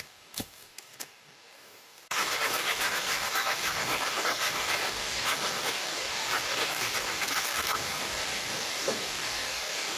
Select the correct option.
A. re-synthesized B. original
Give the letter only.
A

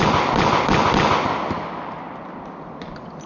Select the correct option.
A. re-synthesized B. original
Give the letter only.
B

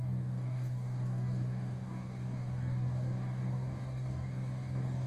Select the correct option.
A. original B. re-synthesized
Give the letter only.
B